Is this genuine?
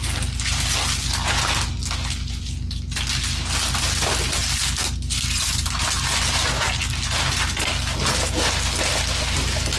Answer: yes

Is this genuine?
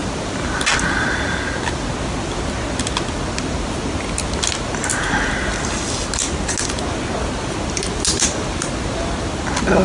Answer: yes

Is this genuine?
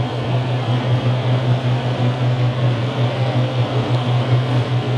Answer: no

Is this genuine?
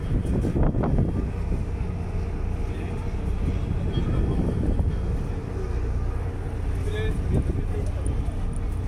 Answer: yes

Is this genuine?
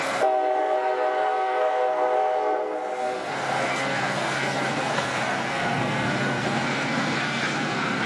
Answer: no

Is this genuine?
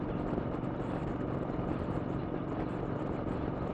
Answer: yes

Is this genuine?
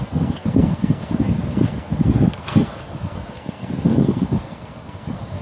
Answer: no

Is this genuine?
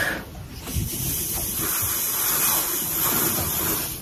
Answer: yes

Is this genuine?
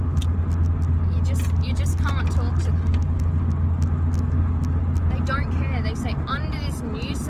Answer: yes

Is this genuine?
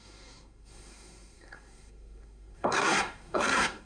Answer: no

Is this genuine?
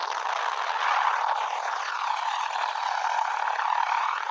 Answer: yes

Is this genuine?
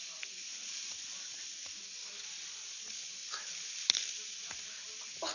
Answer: yes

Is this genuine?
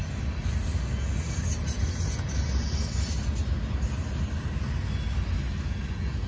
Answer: yes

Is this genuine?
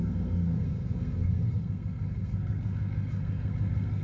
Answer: no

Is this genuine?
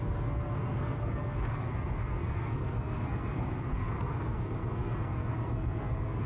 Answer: no